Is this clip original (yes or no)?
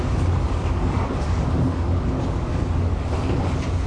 no